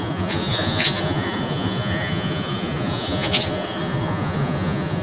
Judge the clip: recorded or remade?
remade